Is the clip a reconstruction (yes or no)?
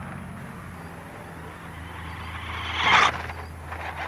no